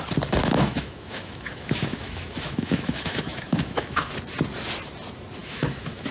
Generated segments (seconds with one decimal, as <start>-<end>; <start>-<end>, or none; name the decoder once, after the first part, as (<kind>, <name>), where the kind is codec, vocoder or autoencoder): 0.4-4.1 (autoencoder, DAC-VAE); 5.4-6.1